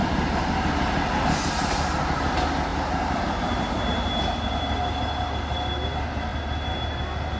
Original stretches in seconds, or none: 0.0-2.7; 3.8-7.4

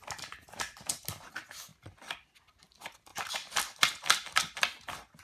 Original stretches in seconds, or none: 0.0-5.2

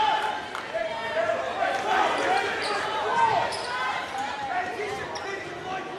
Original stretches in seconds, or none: 0.0-0.8; 1.4-3.1; 5.0-6.0

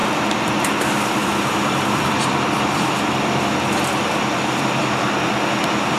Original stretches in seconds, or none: 0.0-1.2; 4.8-6.0

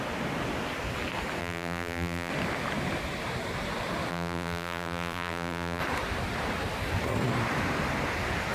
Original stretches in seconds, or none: 0.0-1.4; 2.3-4.1; 5.8-8.5

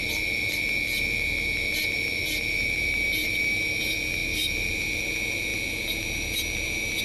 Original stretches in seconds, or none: none

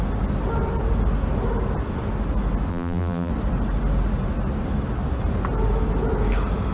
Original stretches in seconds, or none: 0.0-2.7; 3.3-6.7